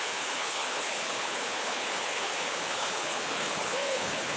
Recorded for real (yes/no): no